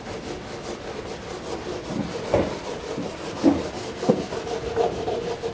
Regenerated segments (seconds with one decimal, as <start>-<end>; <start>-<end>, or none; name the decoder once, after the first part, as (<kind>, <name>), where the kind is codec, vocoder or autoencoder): 3.8-4.3 (codec, SNAC)